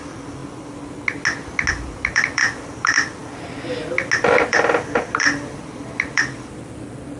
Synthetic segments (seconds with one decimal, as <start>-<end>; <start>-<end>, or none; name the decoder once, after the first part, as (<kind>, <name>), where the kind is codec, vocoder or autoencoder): 0.0-0.4 (vocoder, BigVGAN v2); 1.7-3.2; 4.5-7.2